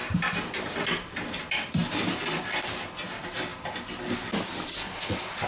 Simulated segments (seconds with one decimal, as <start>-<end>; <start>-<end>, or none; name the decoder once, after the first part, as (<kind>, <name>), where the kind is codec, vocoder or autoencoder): 0.0-0.7 (vocoder, BigVGAN v2)